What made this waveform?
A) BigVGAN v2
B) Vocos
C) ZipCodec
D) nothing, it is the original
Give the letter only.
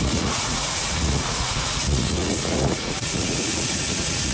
B